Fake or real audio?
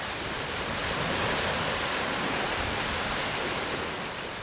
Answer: real